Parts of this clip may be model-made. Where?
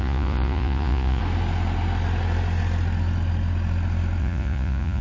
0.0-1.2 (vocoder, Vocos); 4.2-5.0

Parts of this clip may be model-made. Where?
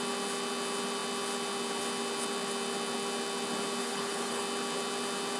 3.8-4.4 (codec, HILCodec)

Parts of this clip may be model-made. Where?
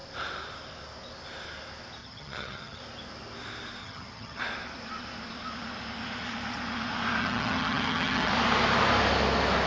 2.0-2.8 (vocoder, HiFi-GAN); 3.8-4.4; 7.2-8.3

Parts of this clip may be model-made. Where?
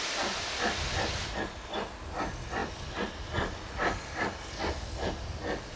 none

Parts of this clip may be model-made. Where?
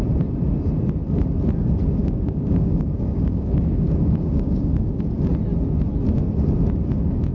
2.0-5.0 (codec, DAC)